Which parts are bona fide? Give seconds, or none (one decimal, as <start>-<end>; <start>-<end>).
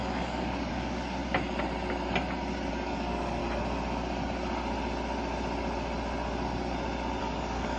1.2-2.7; 3.4-7.2